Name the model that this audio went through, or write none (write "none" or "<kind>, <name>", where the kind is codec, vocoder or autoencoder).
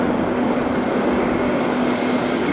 codec, DAC